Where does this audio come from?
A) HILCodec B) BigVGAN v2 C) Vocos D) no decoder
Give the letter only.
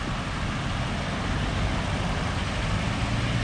D